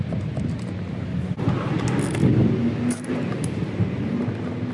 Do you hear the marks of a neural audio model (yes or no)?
no